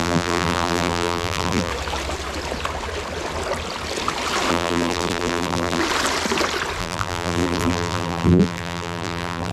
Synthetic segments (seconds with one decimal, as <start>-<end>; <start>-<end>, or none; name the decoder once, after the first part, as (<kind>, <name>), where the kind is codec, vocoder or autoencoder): 0.0-1.7 (vocoder, BigVGAN v2); 4.5-5.8; 6.8-9.5

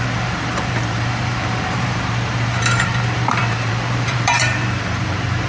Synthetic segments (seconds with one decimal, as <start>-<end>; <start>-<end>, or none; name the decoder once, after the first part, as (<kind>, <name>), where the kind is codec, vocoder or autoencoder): 0.0-5.5 (vocoder, BigVGAN v2)

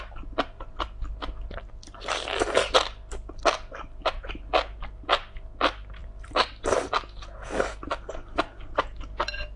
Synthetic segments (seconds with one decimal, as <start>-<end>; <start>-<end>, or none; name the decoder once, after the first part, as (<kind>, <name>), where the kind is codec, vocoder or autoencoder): 4.0-4.5 (vocoder, BigVGAN v2); 6.0-6.5

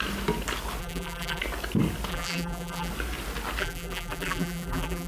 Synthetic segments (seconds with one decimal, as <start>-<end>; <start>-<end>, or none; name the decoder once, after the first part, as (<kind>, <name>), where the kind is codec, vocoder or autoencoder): 0.8-1.4 (vocoder, BigVGAN v2); 2.1-2.9; 3.6-5.1